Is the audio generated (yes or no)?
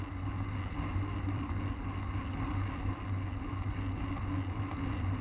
no